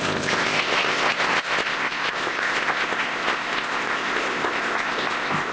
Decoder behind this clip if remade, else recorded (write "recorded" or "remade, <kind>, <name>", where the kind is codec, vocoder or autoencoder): remade, codec, ZipCodec